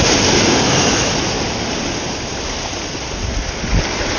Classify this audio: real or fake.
real